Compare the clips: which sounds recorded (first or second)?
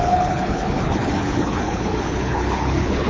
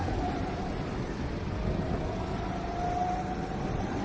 second